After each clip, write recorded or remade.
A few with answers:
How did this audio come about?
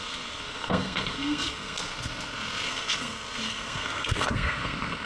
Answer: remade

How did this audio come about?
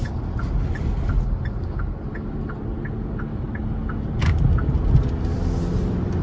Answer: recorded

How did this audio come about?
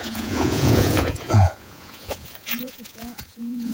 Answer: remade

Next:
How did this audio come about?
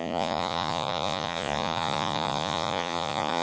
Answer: remade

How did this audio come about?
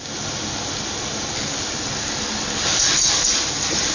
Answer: recorded